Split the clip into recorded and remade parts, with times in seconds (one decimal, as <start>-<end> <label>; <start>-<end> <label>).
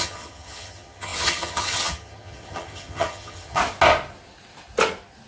0.0-3.6 remade; 3.6-5.3 recorded